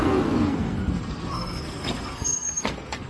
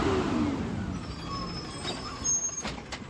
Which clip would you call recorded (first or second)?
second